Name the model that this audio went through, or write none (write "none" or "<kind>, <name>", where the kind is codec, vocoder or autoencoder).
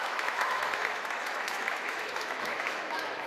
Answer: autoencoder, DAC-VAE